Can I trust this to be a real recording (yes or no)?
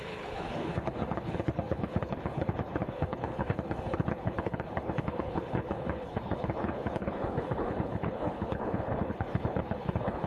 no